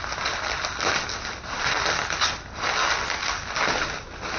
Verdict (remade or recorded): recorded